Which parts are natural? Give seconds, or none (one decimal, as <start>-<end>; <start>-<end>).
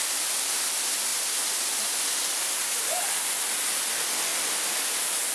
0.0-5.3